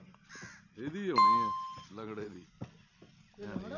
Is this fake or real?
real